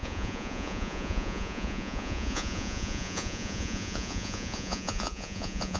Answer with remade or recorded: remade